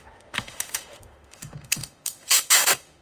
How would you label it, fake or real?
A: fake